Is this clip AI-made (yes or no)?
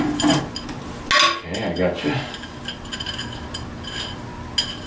no